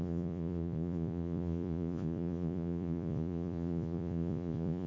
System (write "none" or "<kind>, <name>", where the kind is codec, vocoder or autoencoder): vocoder, Vocos